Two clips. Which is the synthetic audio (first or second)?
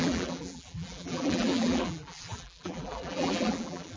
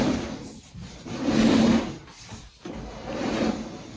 first